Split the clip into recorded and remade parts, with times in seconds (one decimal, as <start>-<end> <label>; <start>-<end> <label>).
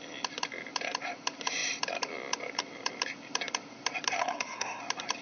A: 0.0-4.2 recorded; 4.2-4.8 remade; 4.8-5.2 recorded